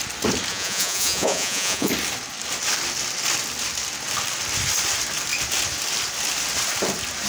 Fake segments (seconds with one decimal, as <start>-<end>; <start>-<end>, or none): 0.5-1.9